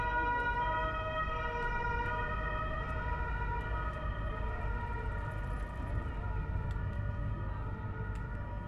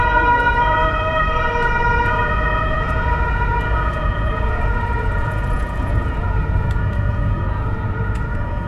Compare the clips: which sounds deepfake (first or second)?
second